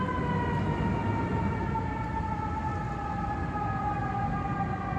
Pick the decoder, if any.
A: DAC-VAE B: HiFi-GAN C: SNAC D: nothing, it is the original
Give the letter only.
D